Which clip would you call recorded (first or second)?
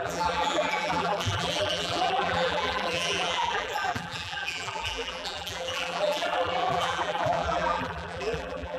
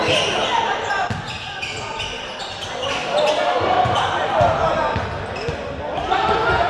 second